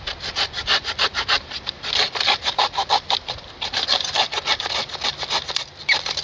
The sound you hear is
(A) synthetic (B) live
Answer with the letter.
B